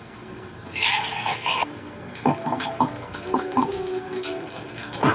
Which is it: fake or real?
fake